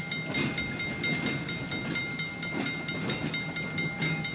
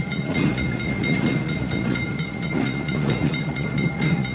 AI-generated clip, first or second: second